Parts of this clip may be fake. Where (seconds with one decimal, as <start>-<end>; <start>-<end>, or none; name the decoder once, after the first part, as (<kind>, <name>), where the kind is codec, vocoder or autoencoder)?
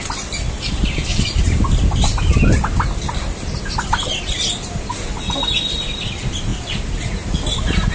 none